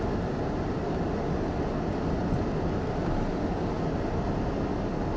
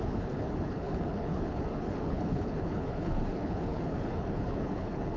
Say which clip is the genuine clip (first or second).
first